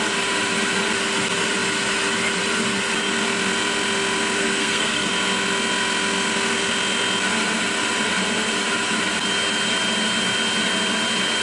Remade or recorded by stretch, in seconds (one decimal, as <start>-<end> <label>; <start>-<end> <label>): 0.0-4.4 recorded; 4.4-5.1 remade; 5.1-11.4 recorded

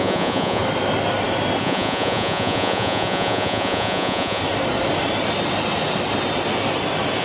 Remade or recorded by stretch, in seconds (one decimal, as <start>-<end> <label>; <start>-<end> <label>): 0.0-0.6 remade; 0.6-1.6 recorded; 1.6-4.4 remade; 4.4-7.2 recorded

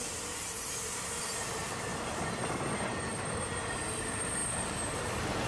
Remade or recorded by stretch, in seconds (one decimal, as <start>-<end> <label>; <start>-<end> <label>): 0.0-5.5 recorded

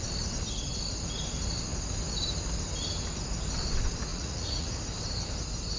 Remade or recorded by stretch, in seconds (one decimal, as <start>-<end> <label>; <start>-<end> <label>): 0.0-4.1 recorded; 4.1-4.8 remade; 4.8-5.8 recorded